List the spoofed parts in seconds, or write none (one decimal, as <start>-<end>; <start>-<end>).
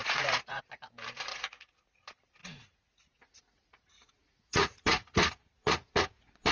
0.0-0.6; 1.3-2.0; 2.4-6.5